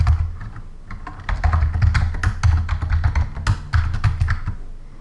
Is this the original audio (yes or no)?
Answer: yes